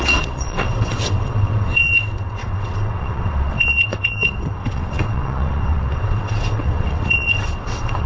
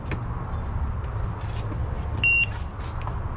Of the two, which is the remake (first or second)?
first